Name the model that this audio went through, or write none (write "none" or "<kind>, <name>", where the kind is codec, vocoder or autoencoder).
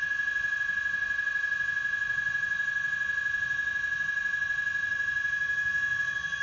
none